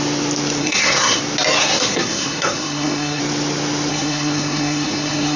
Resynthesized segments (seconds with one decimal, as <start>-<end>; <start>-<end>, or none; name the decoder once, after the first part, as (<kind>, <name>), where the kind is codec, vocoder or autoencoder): 0.6-1.2 (codec, SNAC); 1.6-3.2; 3.9-5.4